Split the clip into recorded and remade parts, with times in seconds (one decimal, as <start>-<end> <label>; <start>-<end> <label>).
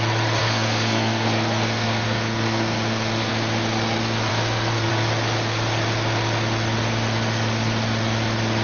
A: 0.0-0.4 recorded; 0.4-3.3 remade; 3.3-4.3 recorded; 4.3-4.9 remade; 4.9-8.6 recorded